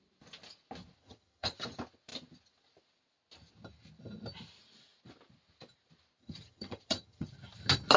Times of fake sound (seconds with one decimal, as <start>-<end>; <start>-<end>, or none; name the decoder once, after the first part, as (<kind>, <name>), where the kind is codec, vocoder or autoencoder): 1.0-1.5 (vocoder, HiFi-GAN); 6.2-7.3